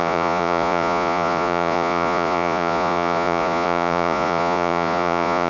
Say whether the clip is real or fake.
fake